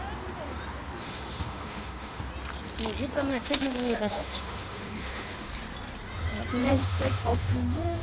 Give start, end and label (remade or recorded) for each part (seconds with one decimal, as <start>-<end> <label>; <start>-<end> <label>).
0.0-1.0 recorded; 1.0-2.2 remade; 2.2-3.3 recorded; 3.3-5.5 remade; 5.5-6.6 recorded; 6.6-8.0 remade